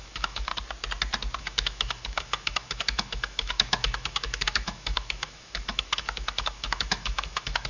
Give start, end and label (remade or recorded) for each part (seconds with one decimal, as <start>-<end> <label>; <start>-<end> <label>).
0.0-0.5 remade; 0.5-1.4 recorded; 1.4-7.7 remade